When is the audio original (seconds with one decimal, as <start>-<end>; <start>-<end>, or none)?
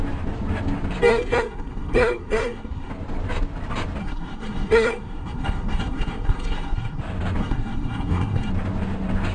0.0-1.1; 2.9-4.0; 7.0-7.4; 8.5-9.3